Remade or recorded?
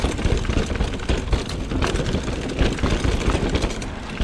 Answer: recorded